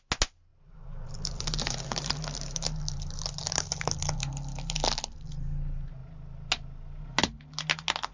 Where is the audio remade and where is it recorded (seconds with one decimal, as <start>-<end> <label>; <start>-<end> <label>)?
0.0-0.5 recorded; 0.5-4.3 remade; 4.3-8.1 recorded